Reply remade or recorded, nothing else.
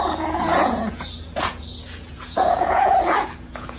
remade